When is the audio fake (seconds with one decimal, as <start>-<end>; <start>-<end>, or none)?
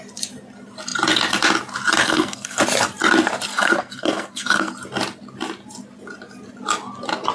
2.0-2.6; 3.5-4.7